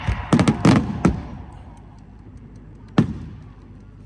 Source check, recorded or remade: recorded